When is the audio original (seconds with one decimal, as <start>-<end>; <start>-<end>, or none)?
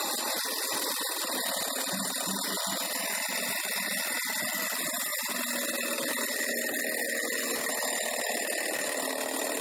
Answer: 0.0-9.6